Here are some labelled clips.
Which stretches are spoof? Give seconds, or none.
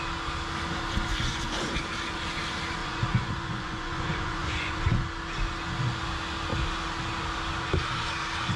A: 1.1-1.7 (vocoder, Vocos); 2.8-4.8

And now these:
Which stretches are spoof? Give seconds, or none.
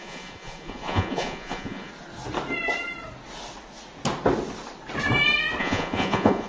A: 0.0-1.9 (vocoder, Vocos); 5.6-6.5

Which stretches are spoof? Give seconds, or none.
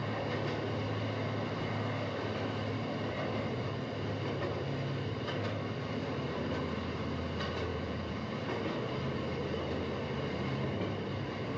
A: 7.7-8.3 (vocoder, Vocos)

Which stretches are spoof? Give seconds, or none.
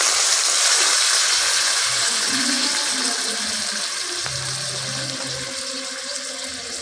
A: 1.2-2.7 (vocoder, Vocos)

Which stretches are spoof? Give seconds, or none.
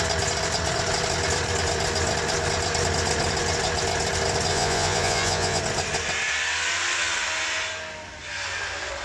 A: 4.5-5.6 (vocoder, Vocos)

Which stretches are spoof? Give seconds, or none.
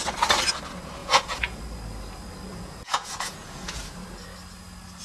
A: 1.0-1.6 (vocoder, Vocos); 2.5-3.8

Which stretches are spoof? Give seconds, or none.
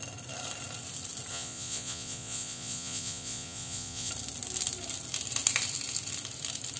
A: 1.3-4.1 (vocoder, Vocos)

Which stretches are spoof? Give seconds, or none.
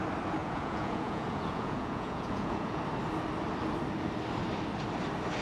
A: 0.4-2.8 (vocoder, Vocos)